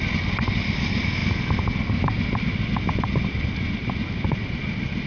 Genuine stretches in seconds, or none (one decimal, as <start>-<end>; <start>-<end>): 0.0-5.1